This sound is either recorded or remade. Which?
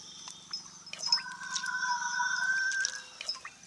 recorded